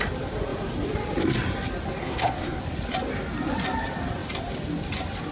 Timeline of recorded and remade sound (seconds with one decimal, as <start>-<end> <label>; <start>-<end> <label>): 0.0-2.0 recorded; 2.0-2.6 remade; 2.6-5.3 recorded